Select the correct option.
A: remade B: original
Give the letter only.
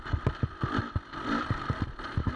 B